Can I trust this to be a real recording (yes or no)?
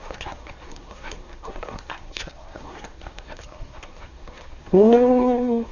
no